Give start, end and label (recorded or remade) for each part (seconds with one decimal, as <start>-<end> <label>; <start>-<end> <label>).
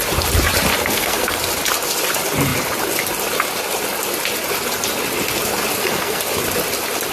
0.0-0.7 recorded; 0.7-1.4 remade; 1.4-5.7 recorded; 5.7-6.2 remade; 6.2-7.1 recorded